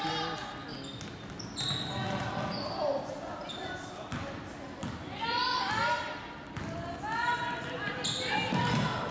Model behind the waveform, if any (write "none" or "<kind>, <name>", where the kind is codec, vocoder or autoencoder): none